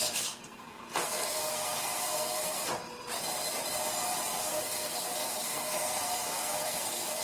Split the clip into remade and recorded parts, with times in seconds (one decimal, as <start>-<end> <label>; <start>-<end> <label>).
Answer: 0.0-2.7 remade; 2.7-4.3 recorded; 4.3-7.2 remade